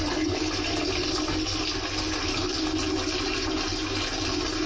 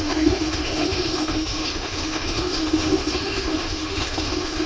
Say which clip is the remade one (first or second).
second